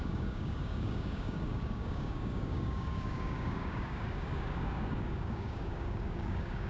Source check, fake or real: fake